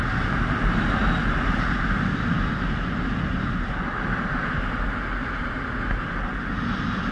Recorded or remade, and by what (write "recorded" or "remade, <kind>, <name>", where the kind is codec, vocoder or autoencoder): recorded